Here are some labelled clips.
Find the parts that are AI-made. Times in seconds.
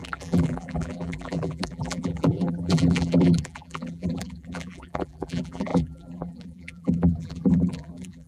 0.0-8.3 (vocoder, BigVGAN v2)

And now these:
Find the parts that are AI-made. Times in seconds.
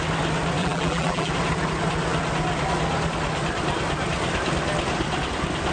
0.6-1.3 (vocoder, BigVGAN v2)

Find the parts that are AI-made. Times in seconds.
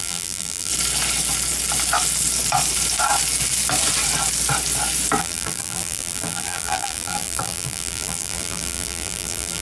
0.0-0.7 (vocoder, BigVGAN v2); 5.2-9.6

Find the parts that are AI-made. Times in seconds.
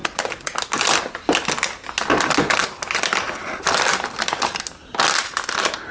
none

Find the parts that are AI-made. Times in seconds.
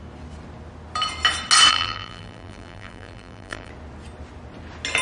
1.7-3.7 (vocoder, BigVGAN v2)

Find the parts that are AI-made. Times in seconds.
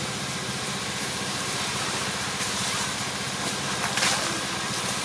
1.7-3.3 (vocoder, BigVGAN v2)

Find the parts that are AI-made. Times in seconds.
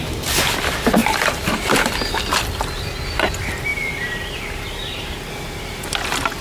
1.0-3.3 (vocoder, BigVGAN v2); 3.7-5.1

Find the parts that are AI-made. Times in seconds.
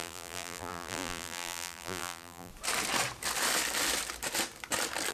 0.0-2.5 (vocoder, BigVGAN v2)